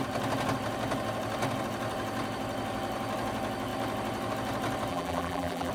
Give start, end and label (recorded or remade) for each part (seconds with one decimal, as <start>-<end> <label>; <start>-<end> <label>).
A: 0.0-4.9 recorded; 4.9-5.7 remade